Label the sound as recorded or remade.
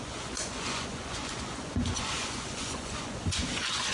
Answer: remade